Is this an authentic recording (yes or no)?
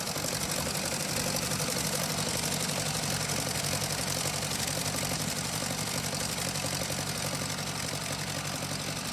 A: yes